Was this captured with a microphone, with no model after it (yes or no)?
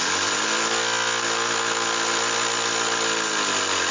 yes